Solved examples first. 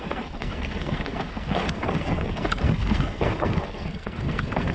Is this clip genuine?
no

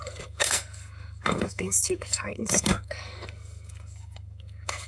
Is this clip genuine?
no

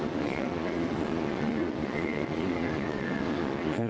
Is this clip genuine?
no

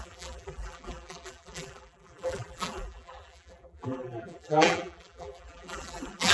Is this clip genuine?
no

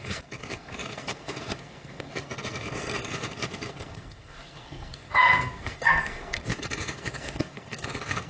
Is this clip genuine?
no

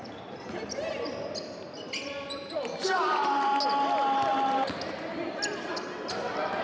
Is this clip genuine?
yes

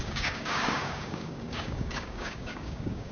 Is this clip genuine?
no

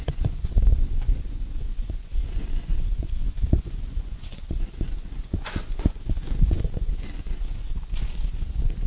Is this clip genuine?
no